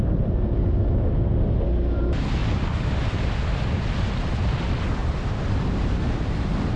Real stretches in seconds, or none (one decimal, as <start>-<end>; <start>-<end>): 0.0-5.0